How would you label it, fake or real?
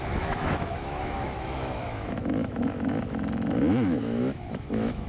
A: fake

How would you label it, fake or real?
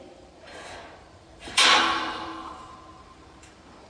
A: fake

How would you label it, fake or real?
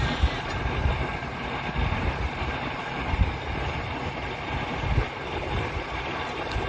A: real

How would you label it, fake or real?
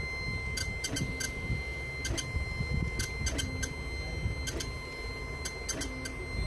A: real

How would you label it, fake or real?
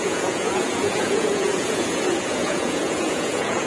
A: fake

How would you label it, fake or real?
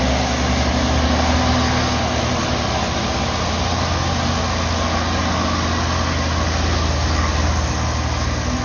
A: real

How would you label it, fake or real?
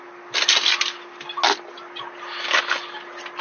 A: real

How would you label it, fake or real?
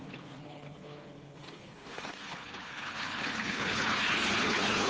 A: fake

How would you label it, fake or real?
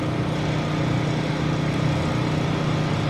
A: real